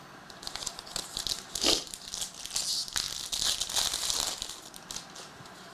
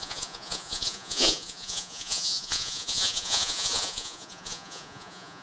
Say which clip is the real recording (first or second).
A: first